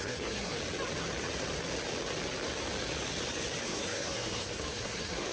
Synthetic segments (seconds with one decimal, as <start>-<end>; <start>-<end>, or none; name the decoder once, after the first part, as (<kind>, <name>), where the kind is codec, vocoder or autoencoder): 0.0-0.6 (codec, SNAC); 3.6-5.3

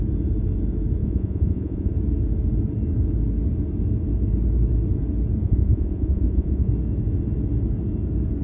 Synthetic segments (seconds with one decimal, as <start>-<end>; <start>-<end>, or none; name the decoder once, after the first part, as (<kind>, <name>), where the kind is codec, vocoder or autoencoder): 1.0-1.9 (vocoder, Vocos); 5.4-6.7

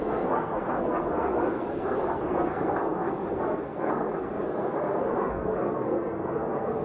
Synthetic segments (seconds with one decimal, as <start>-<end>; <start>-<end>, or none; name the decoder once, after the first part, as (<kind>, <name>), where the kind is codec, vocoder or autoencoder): 0.0-6.8 (codec, SNAC)

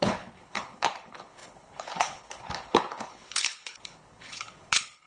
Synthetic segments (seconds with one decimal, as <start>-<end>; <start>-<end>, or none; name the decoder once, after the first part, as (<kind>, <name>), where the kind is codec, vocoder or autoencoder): 0.0-5.1 (codec, HILCodec)

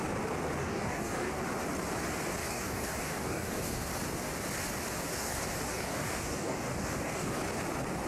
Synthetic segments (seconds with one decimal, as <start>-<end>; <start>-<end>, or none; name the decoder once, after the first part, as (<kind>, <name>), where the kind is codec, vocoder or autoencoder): 0.6-1.4 (codec, DAC); 2.4-3.9; 5.1-7.4

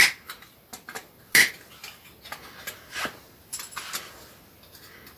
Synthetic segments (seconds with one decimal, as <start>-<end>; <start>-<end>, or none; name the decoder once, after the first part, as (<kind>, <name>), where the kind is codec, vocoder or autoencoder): none

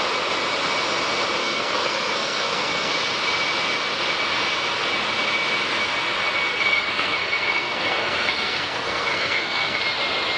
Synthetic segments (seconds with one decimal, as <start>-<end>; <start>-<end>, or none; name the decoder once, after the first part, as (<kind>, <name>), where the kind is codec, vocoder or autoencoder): 1.4-2.9 (codec, SNAC); 6.5-9.8

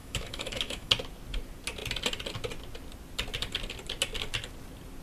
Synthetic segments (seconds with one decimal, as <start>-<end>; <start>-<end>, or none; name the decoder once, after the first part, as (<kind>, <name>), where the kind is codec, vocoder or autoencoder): 0.0-0.9 (autoencoder, DAC-VAE)